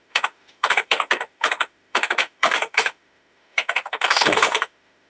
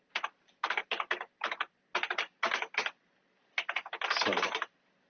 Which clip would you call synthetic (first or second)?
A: first